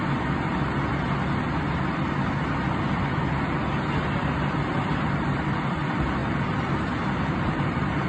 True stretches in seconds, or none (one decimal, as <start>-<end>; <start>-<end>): 0.0-6.2